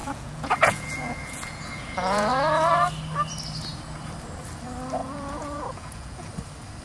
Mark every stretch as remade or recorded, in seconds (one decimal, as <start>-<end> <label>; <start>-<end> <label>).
0.0-2.3 remade; 2.3-5.0 recorded; 5.0-6.3 remade; 6.3-6.8 recorded